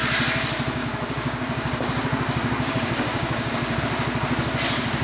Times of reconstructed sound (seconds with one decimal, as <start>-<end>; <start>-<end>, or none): 0.8-3.8